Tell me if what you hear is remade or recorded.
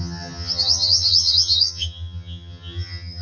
remade